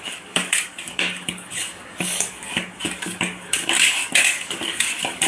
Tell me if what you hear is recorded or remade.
remade